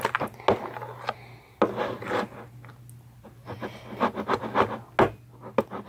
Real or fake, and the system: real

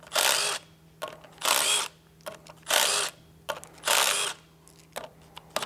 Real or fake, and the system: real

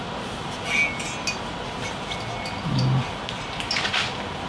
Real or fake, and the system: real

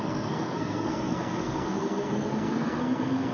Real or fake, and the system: fake, codec, SNAC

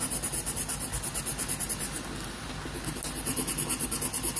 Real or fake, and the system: real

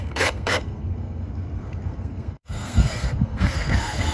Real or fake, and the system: fake, codec, SNAC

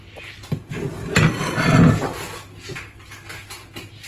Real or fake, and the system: real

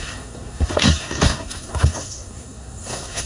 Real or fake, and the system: fake, codec, SNAC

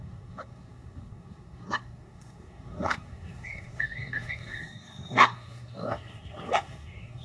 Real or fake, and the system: fake, codec, SNAC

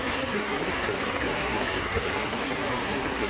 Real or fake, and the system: fake, codec, SNAC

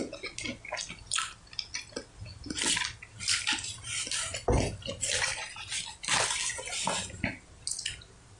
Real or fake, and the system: real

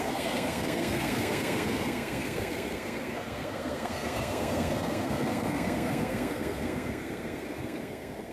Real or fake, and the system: fake, codec, SNAC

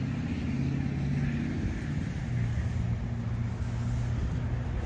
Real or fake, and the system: real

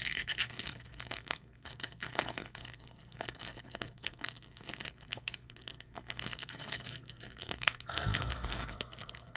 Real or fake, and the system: fake, codec, SNAC